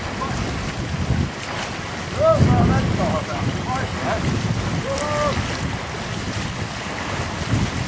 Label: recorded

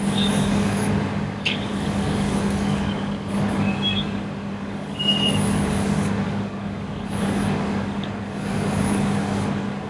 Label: remade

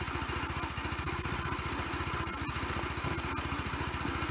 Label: recorded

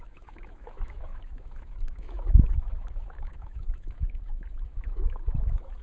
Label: remade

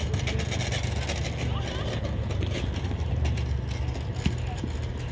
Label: recorded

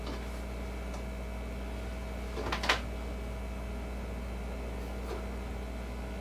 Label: recorded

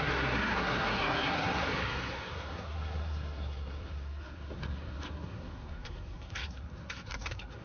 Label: remade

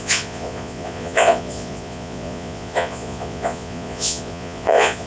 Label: remade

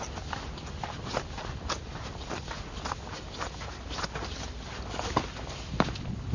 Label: recorded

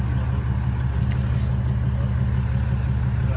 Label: recorded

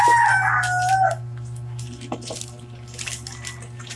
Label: recorded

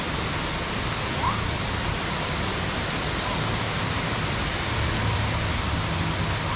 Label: recorded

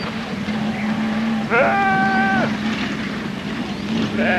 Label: recorded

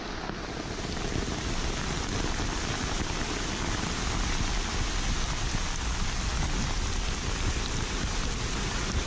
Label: recorded